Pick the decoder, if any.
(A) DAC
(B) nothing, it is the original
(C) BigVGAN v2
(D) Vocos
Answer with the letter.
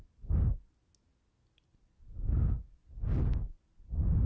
B